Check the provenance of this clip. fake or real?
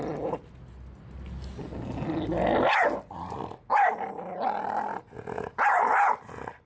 real